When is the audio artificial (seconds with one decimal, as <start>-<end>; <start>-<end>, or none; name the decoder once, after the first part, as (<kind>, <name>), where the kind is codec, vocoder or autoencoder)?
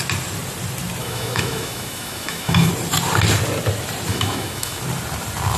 1.0-2.7 (autoencoder, DAC-VAE); 4.1-4.8